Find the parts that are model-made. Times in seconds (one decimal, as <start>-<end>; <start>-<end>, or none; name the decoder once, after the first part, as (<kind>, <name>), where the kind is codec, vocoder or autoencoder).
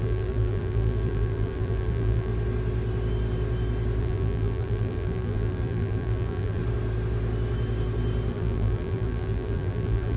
0.0-2.3 (vocoder, BigVGAN v2); 4.0-6.6; 8.3-10.2